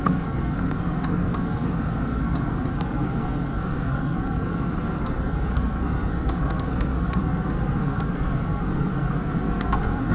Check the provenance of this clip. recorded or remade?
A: remade